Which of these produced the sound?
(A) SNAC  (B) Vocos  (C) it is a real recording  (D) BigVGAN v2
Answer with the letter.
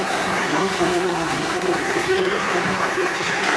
A